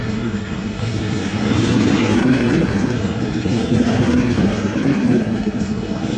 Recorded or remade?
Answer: remade